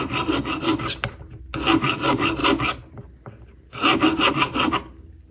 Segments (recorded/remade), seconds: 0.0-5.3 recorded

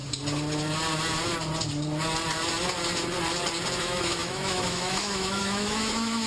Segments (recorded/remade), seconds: 0.0-3.8 recorded; 3.8-6.3 remade

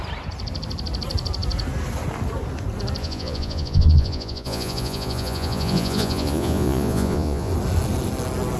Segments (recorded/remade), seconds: 0.0-3.0 recorded; 3.0-7.5 remade; 7.5-8.6 recorded

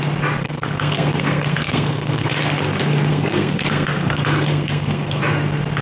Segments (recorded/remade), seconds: 0.0-0.4 recorded; 0.4-2.3 remade; 2.3-3.1 recorded; 3.1-5.2 remade; 5.2-5.8 recorded

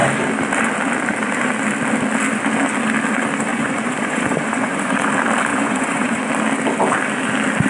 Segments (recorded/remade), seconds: 0.0-3.5 recorded; 3.5-5.1 remade; 5.1-5.5 recorded; 5.5-6.3 remade; 6.3-7.7 recorded

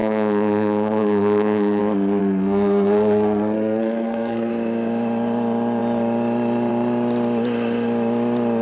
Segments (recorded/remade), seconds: 0.0-1.8 remade; 1.8-2.2 recorded; 2.2-4.5 remade; 4.5-8.6 recorded